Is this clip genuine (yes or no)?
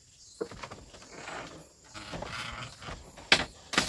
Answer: yes